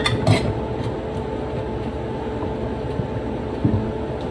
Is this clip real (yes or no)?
yes